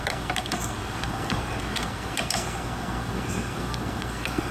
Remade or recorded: remade